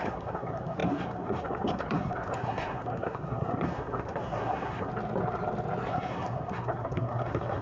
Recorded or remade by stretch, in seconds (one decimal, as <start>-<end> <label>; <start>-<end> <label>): 0.0-4.9 remade; 4.9-5.9 recorded; 5.9-7.6 remade